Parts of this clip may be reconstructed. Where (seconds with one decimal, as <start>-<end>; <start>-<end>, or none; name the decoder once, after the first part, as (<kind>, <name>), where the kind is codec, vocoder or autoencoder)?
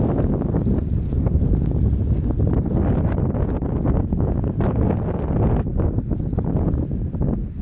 none